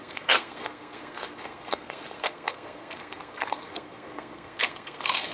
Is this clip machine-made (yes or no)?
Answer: yes